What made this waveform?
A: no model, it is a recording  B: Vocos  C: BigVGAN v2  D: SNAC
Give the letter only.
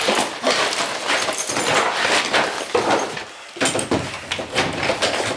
C